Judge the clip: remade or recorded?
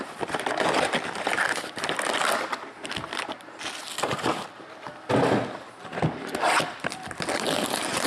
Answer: recorded